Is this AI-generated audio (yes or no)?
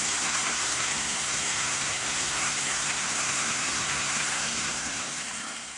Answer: yes